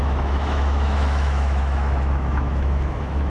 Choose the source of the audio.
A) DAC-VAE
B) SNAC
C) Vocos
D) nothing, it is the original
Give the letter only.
A